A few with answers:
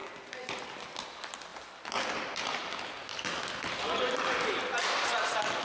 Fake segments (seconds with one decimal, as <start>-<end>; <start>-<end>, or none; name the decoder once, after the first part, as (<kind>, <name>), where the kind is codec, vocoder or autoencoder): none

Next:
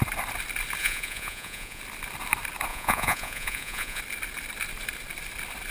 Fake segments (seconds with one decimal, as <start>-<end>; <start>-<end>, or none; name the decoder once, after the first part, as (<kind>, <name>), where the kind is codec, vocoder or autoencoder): 0.8-1.8 (vocoder, Vocos); 2.7-4.0

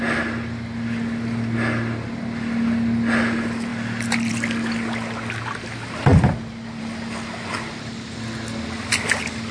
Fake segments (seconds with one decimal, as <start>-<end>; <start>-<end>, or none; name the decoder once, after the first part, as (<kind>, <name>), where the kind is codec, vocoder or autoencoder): none

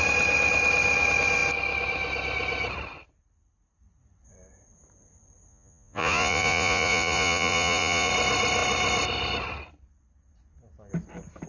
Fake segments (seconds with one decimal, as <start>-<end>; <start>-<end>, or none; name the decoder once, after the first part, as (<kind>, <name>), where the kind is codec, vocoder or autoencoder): 5.5-8.1 (vocoder, Vocos)

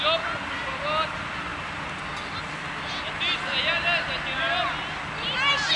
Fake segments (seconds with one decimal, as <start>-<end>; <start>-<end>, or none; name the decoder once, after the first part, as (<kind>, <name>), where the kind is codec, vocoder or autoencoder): none

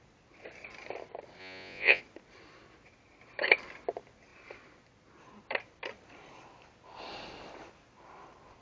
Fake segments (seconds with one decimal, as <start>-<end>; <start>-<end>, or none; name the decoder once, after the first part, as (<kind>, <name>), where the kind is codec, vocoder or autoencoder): 1.4-2.0 (vocoder, Vocos)

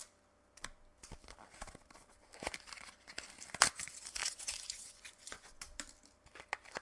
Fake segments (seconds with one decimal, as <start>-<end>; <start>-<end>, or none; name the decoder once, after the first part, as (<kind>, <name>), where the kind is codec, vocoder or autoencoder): 4.2-5.6 (vocoder, Vocos)